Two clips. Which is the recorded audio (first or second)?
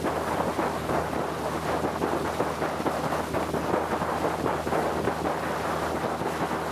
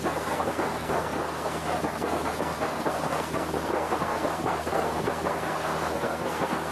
first